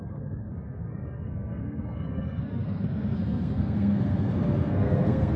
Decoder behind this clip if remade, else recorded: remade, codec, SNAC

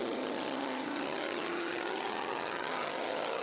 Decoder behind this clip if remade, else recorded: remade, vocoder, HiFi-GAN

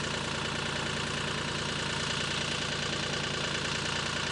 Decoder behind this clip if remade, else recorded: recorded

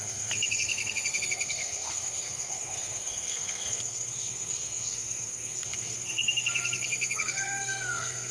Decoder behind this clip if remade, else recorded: remade, codec, SNAC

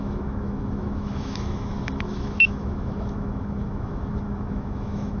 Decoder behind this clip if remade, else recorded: remade, autoencoder, DAC-VAE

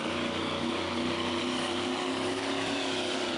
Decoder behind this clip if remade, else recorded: remade, codec, DAC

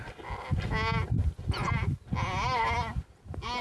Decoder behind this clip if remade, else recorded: recorded